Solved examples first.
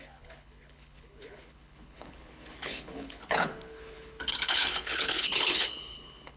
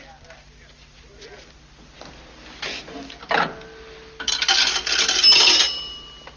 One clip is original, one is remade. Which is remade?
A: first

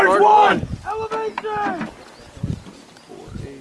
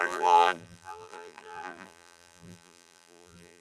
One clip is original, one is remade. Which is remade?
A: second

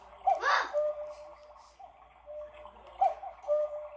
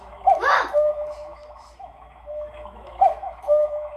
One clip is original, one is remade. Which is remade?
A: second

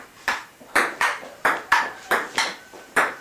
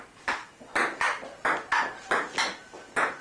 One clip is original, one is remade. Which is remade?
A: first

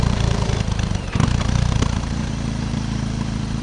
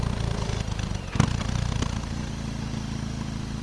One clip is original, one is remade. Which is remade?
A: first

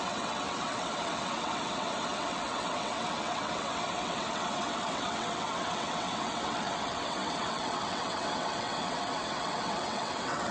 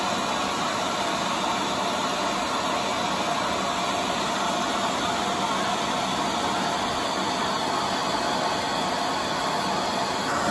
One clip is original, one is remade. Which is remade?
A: first